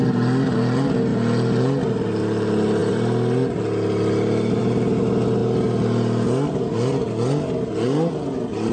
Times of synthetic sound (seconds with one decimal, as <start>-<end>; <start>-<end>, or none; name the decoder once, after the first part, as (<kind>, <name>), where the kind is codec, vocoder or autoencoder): none